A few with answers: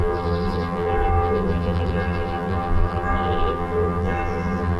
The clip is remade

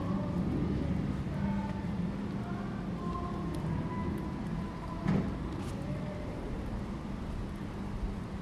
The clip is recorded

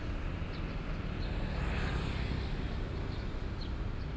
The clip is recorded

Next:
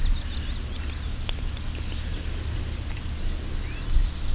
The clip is recorded